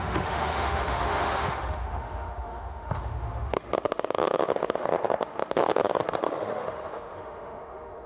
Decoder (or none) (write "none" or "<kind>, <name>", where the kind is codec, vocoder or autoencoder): autoencoder, DAC-VAE